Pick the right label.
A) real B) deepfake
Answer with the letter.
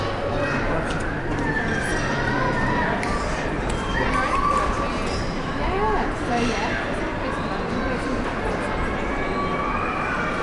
A